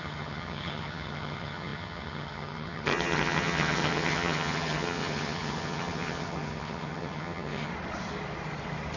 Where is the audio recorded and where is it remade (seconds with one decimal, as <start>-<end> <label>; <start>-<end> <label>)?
0.0-7.7 remade; 7.7-9.0 recorded